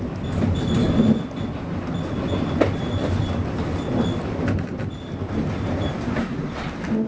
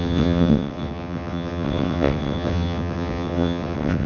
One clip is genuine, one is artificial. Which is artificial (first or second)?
second